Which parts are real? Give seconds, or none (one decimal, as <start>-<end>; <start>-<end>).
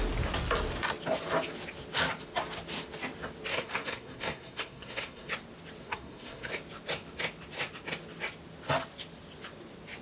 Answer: 0.0-3.5; 5.3-5.8; 6.5-10.0